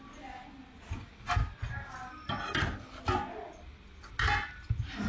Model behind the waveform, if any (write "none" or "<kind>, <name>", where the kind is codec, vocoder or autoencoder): none